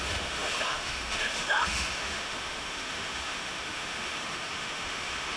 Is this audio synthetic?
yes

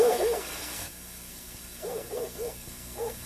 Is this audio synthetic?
yes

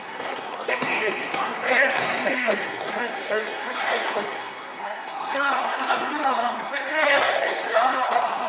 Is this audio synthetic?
yes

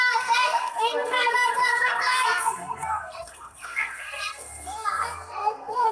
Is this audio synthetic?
yes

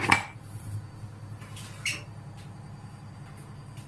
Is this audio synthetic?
no